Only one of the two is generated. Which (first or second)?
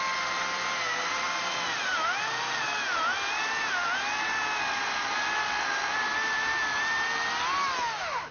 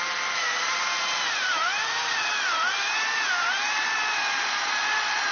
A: second